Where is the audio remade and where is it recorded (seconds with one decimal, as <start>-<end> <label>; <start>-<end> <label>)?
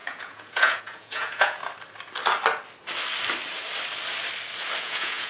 0.0-1.6 remade; 1.6-4.8 recorded; 4.8-5.3 remade